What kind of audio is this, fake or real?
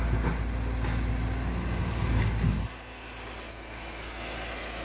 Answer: real